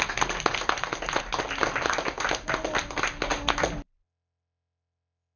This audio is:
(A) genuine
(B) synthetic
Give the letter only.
A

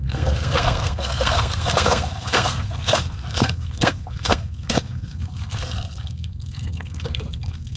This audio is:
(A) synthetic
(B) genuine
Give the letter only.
A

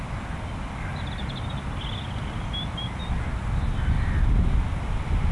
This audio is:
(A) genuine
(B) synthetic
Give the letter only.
A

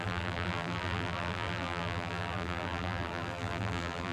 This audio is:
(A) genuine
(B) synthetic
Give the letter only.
B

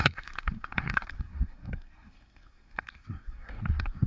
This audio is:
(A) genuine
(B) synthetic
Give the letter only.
B